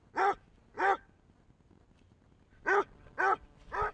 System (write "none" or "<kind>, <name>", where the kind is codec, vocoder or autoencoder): none